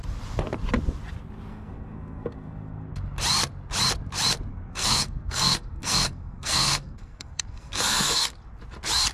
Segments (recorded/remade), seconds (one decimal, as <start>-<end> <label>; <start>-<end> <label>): 0.0-1.5 recorded; 1.5-2.9 remade; 2.9-4.5 recorded; 4.5-8.4 remade; 8.4-9.1 recorded